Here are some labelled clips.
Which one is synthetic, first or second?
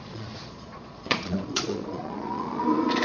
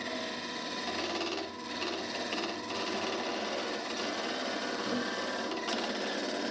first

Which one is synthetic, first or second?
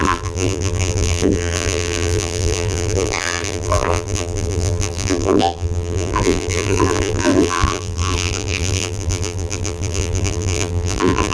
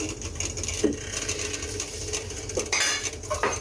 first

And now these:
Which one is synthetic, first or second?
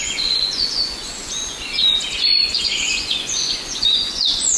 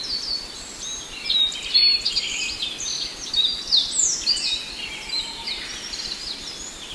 first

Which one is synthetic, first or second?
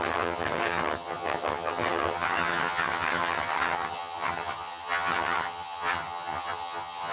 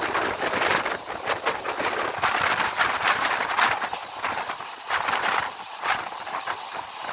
first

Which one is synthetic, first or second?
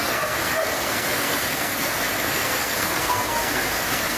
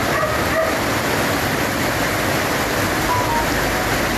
first